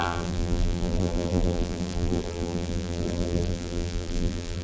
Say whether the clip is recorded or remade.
remade